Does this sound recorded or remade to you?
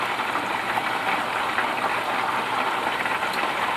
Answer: recorded